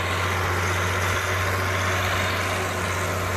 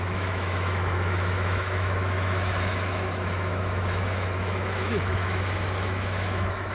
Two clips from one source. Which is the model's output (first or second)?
second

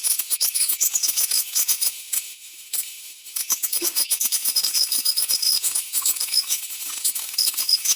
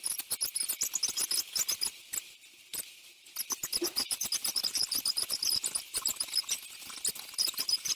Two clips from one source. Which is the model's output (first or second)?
first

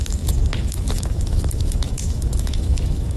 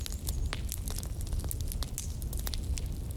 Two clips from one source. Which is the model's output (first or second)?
first